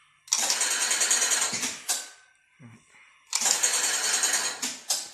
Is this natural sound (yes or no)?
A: yes